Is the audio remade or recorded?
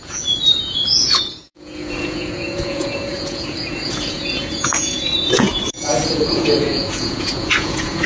remade